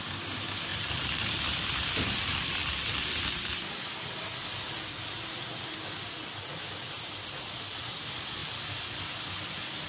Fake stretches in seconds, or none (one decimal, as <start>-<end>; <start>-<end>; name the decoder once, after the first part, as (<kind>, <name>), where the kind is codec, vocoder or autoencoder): 0.7-1.4 (vocoder, BigVGAN v2); 2.6-3.7; 8.4-9.2